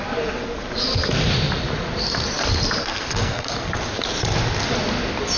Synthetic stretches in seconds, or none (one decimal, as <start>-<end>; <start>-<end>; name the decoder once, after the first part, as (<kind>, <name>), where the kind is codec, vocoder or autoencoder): 2.8-3.7 (codec, SNAC)